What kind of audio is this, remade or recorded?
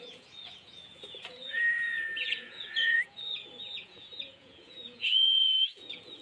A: remade